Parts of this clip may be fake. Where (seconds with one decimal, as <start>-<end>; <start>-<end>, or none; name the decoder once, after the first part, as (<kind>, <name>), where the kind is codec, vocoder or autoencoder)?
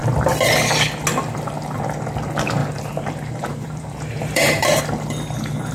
2.6-4.8 (vocoder, BigVGAN v2)